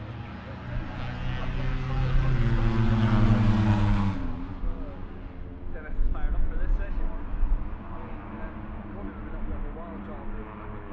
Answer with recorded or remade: recorded